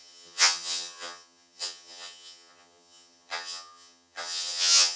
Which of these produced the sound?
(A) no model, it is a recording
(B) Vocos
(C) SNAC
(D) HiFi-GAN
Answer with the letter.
D